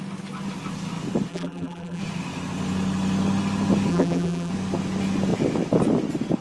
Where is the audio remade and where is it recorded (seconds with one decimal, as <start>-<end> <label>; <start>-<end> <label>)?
0.0-1.3 recorded; 1.3-2.0 remade; 2.0-3.9 recorded; 3.9-4.5 remade; 4.5-6.4 recorded